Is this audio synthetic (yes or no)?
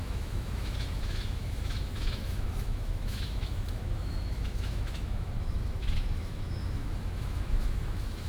yes